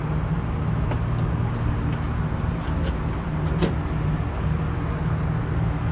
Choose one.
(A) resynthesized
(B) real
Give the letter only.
B